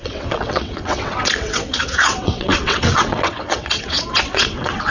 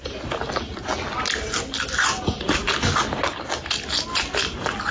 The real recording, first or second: second